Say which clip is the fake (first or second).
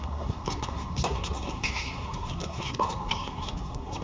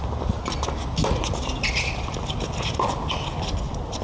first